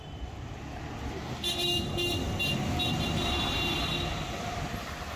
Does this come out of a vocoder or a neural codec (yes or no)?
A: no